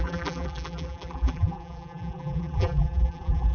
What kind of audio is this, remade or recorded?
remade